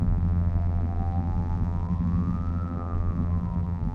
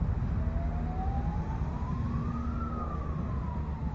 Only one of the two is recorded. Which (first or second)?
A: second